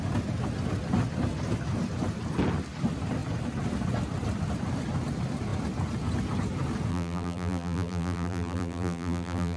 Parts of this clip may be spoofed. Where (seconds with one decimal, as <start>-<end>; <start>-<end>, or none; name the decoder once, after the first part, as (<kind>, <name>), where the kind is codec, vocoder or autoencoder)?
6.9-9.6 (vocoder, BigVGAN v2)